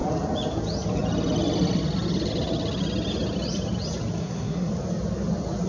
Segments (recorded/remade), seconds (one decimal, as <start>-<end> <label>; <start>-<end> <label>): 0.0-4.2 recorded; 4.2-4.7 remade; 4.7-5.7 recorded